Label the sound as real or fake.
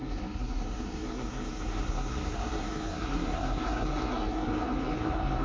fake